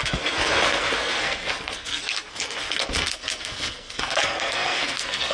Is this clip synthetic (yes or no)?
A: yes